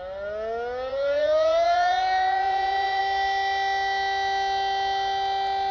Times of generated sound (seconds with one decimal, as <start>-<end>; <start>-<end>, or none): 0.9-3.0